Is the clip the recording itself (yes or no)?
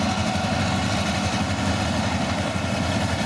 yes